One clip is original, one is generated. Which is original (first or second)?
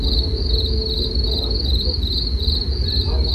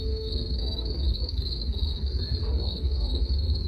first